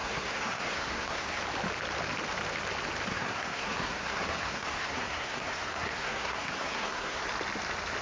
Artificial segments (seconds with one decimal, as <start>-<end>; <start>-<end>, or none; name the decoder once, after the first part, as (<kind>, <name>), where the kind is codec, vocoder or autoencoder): 0.0-1.4 (codec, SNAC); 3.1-7.2